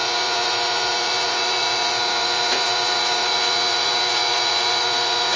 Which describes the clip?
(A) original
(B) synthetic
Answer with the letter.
B